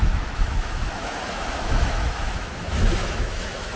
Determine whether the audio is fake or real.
fake